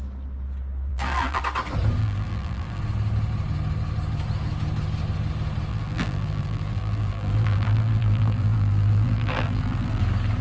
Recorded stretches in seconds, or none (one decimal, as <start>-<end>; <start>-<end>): 0.0-0.9; 1.4-2.0; 2.8-5.7; 10.0-10.4